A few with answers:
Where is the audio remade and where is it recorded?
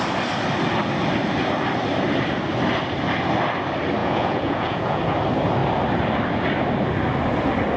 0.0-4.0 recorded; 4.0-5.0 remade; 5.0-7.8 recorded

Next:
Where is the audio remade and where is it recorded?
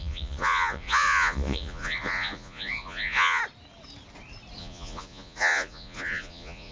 0.0-3.4 remade; 3.4-4.6 recorded; 4.6-6.7 remade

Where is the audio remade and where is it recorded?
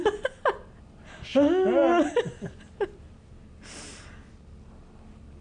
0.0-5.4 recorded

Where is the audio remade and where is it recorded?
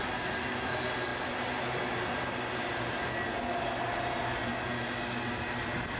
0.0-6.0 recorded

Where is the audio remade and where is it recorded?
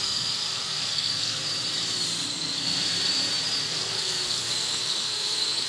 0.0-1.4 remade; 1.4-2.3 recorded; 2.3-2.9 remade; 2.9-3.6 recorded; 3.6-5.7 remade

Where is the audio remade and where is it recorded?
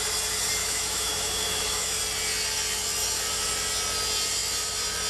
0.0-0.6 recorded; 0.6-2.0 remade; 2.0-5.1 recorded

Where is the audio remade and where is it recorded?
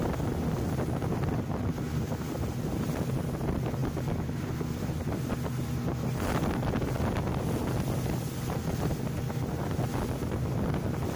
0.0-11.2 recorded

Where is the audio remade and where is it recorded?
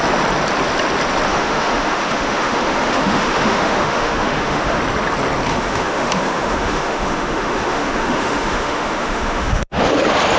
0.0-1.3 recorded; 1.3-4.8 remade; 4.8-5.5 recorded; 5.5-9.8 remade; 9.8-10.4 recorded